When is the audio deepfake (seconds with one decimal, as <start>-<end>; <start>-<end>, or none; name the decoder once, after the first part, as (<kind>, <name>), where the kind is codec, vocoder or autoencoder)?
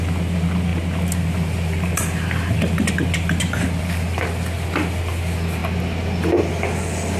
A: none